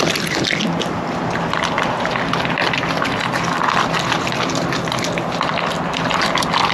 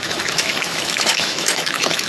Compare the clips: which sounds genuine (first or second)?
first